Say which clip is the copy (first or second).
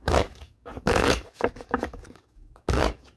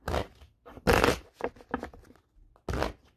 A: first